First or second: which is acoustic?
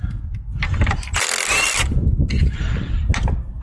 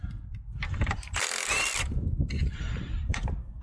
first